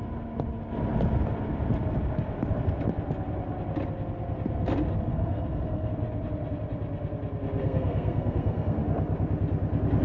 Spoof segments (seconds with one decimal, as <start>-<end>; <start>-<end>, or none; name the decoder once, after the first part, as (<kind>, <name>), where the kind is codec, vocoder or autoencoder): 5.1-5.9 (codec, SNAC); 7.6-8.8